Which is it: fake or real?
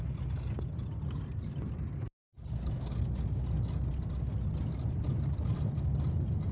real